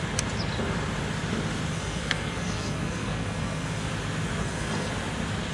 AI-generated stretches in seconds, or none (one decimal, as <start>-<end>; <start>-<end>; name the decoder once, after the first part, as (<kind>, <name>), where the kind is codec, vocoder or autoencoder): 1.7-3.9 (codec, SNAC); 4.4-4.9